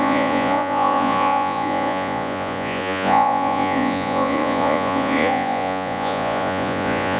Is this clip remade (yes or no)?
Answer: yes